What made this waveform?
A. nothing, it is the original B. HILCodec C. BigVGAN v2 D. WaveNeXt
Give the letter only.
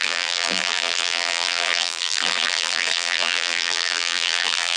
C